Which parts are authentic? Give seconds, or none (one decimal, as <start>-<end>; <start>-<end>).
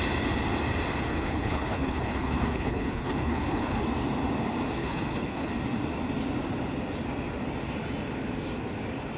0.0-1.1; 3.8-4.8; 5.5-9.2